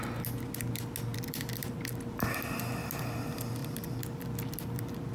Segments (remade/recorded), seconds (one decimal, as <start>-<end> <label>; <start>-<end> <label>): 0.0-1.1 recorded; 1.1-1.9 remade; 1.9-3.6 recorded; 3.6-5.1 remade